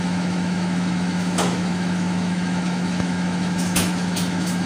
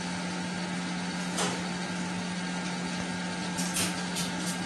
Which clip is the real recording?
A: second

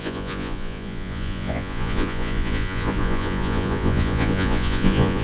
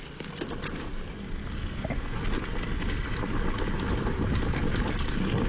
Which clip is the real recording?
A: second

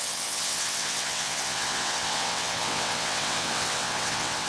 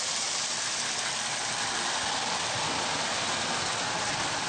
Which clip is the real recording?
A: second